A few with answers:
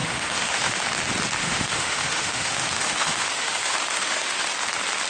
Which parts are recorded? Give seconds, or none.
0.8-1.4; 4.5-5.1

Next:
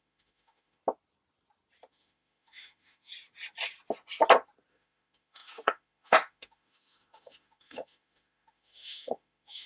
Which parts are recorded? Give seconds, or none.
0.8-1.9; 3.1-4.7

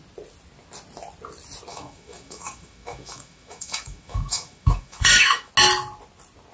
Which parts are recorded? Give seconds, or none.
0.0-1.7; 5.5-6.5

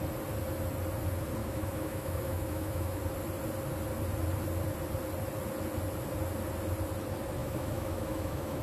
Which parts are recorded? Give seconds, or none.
0.0-1.4; 3.0-7.4

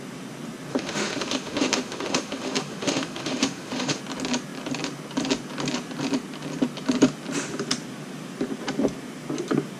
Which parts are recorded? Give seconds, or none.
0.0-0.7; 4.0-9.8

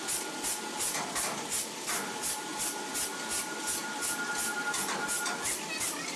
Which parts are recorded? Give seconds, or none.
0.0-6.2

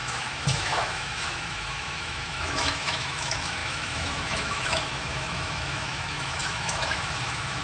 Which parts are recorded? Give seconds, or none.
none

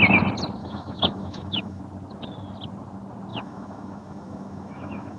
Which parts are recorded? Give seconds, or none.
0.0-0.6; 1.8-3.3